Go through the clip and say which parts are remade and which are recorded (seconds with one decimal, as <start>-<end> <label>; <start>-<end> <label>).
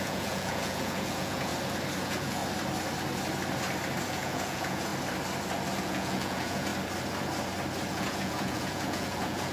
0.0-1.5 remade; 1.5-2.0 recorded; 2.0-2.4 remade; 2.4-4.1 recorded; 4.1-4.9 remade; 4.9-5.8 recorded; 5.8-6.7 remade; 6.7-7.9 recorded; 7.9-9.5 remade